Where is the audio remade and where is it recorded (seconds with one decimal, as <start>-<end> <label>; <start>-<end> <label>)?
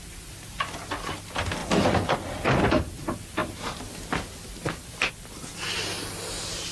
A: 0.0-6.7 recorded